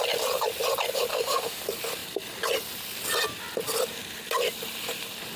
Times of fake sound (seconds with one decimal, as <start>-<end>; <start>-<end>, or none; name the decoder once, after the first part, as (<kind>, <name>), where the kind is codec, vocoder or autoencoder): 1.1-1.6 (autoencoder, DAC-VAE)